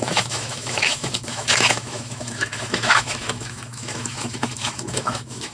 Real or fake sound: fake